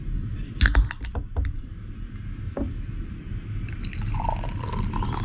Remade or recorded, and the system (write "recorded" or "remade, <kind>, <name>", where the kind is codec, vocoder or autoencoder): recorded